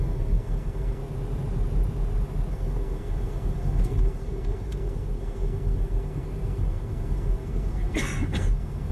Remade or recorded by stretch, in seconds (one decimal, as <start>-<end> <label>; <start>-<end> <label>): 0.0-1.0 remade; 1.0-2.5 recorded; 2.5-8.9 remade